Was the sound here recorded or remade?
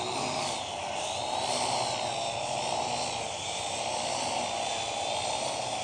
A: recorded